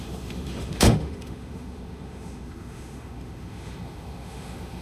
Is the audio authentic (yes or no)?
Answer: no